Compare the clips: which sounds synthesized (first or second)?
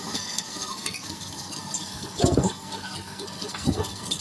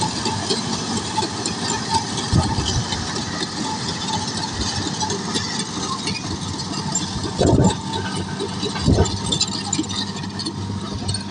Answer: first